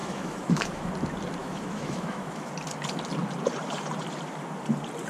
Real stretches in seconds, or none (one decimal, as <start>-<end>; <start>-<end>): 0.9-1.4; 2.5-5.1